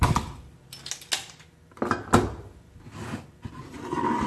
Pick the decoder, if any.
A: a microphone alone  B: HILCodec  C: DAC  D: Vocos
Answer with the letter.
A